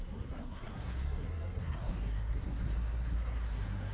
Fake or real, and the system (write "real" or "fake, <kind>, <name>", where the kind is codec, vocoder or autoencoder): fake, codec, SNAC